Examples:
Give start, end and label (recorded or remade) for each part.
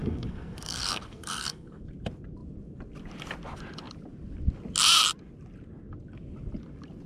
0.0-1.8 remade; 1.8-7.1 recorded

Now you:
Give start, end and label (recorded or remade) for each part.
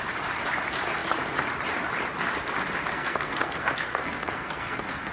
0.0-2.9 recorded; 2.9-5.1 remade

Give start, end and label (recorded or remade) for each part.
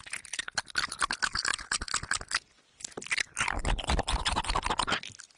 0.0-5.4 recorded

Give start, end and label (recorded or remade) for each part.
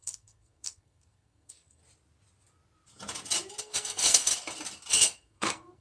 0.0-1.8 remade; 1.8-3.6 recorded; 3.6-4.3 remade; 4.3-4.9 recorded; 4.9-5.8 remade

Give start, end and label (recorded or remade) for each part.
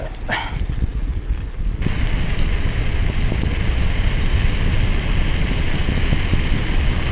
0.0-7.1 recorded